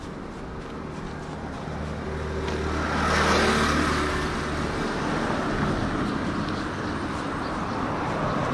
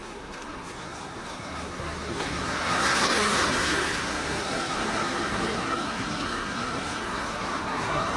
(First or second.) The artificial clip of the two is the second